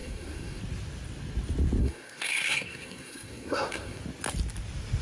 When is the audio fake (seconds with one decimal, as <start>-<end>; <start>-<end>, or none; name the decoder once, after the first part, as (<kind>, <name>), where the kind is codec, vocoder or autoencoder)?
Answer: 0.0-0.6 (codec, SNAC); 1.8-4.0